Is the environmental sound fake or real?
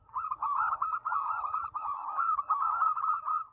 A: fake